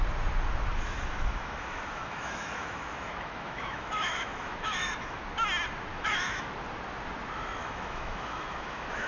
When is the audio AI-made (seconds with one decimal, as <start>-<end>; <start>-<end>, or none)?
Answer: 0.7-5.2; 5.9-6.5; 7.6-9.1